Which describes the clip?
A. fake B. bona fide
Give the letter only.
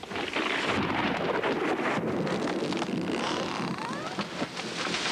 B